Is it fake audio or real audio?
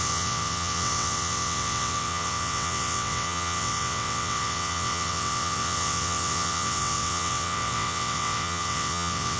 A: fake